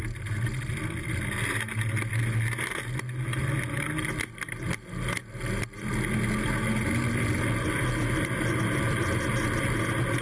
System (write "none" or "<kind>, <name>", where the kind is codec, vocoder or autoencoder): none